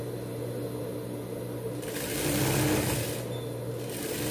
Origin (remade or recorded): recorded